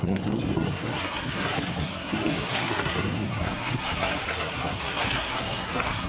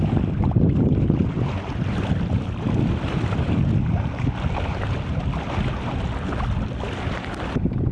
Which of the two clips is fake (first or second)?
first